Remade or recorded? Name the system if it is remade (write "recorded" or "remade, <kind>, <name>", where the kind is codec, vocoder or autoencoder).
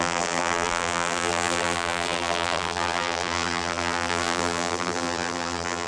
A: remade, vocoder, BigVGAN v2